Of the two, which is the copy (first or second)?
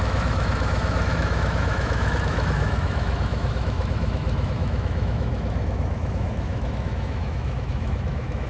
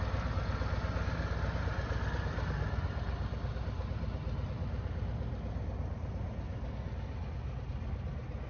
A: first